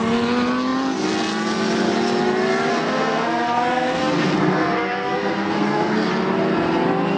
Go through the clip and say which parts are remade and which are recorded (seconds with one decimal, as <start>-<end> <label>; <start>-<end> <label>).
0.0-2.7 recorded; 2.7-6.1 remade; 6.1-7.2 recorded